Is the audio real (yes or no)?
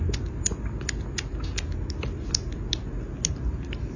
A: yes